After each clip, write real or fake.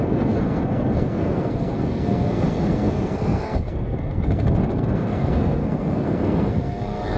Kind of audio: fake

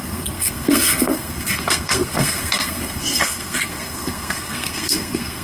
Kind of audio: fake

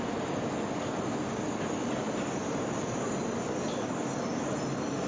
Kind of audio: real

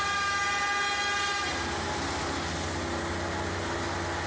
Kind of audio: real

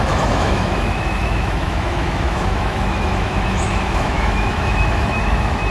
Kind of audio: fake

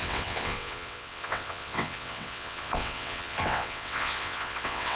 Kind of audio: fake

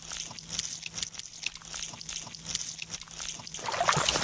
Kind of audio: real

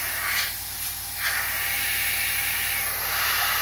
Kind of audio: real